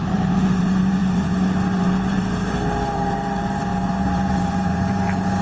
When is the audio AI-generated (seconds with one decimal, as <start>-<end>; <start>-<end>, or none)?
0.0-1.3; 1.8-5.4